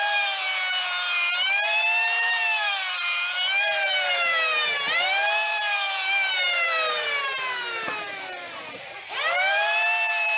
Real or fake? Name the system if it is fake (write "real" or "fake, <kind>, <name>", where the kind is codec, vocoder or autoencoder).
fake, vocoder, BigVGAN v2